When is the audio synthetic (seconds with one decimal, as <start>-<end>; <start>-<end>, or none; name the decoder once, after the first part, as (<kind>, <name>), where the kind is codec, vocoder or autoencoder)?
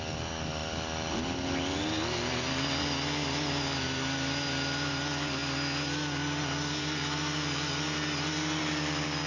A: none